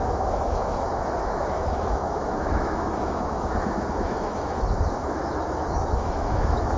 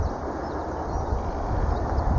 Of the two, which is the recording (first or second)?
second